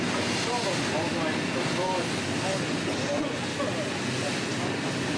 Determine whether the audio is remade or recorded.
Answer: recorded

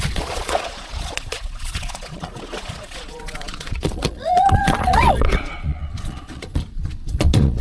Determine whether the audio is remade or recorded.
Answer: remade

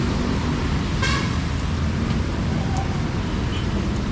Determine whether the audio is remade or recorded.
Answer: recorded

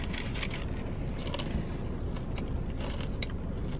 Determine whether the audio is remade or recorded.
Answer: recorded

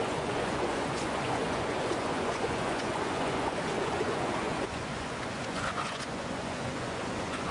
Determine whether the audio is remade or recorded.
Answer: remade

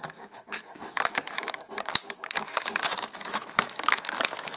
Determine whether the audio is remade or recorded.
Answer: remade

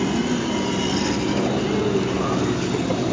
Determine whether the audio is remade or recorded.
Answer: recorded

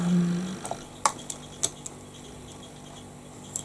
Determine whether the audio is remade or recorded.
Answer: recorded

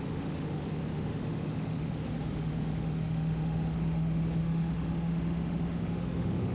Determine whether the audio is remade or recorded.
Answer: remade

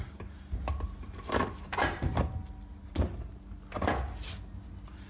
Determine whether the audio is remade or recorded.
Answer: recorded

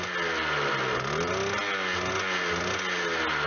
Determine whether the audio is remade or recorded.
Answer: recorded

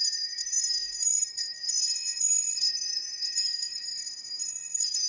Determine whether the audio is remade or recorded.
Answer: remade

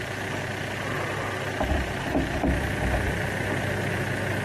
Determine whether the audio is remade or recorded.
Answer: recorded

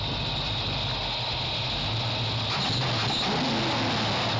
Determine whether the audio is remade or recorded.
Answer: recorded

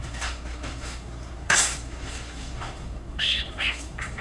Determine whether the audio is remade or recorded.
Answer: remade